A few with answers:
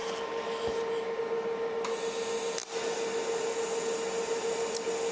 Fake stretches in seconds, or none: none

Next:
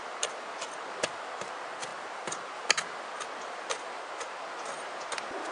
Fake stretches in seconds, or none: none

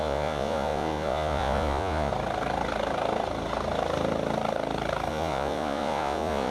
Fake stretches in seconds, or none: 0.0-2.1 (vocoder, Vocos); 5.1-6.5

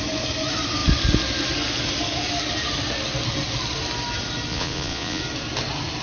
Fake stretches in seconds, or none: 4.5-5.2 (vocoder, Vocos)

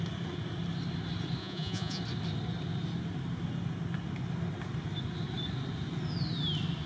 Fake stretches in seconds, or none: 1.4-2.0 (vocoder, Vocos)

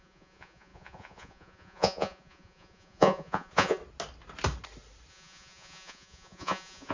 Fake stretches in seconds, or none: 0.0-3.8 (vocoder, Vocos); 5.1-6.9

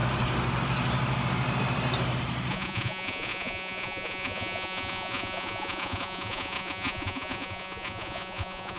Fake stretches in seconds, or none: 2.5-8.8 (vocoder, Vocos)